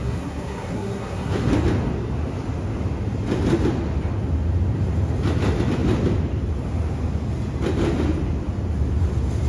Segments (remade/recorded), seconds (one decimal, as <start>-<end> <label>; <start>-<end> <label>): 0.0-1.5 remade; 1.5-9.5 recorded